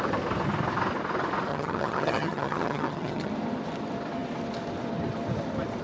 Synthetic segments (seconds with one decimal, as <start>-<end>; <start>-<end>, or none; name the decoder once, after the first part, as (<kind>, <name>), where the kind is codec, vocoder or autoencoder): 1.5-3.3 (vocoder, HiFi-GAN)